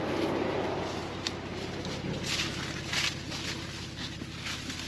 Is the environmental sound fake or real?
real